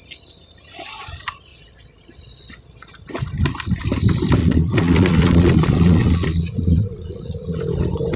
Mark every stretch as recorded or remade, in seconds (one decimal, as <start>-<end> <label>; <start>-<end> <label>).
0.0-1.5 recorded; 1.5-2.9 remade; 2.9-4.4 recorded; 4.4-7.6 remade; 7.6-8.2 recorded